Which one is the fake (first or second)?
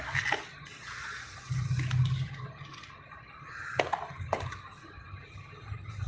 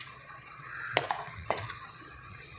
second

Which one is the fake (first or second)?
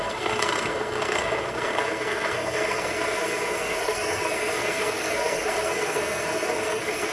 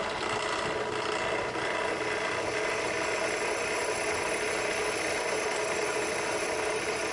first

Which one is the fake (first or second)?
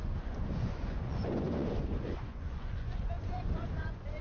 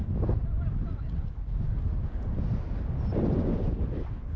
first